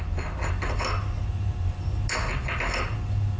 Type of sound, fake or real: real